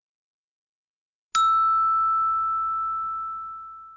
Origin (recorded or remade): recorded